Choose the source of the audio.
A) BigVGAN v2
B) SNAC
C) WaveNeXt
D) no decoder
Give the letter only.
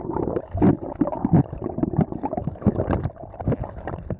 D